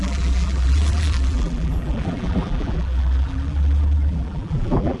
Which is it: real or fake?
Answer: fake